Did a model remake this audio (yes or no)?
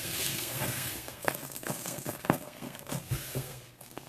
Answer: yes